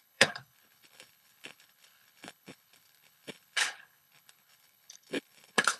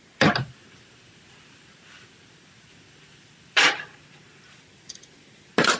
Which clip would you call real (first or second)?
second